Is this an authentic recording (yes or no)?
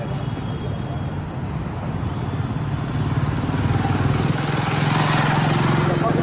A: yes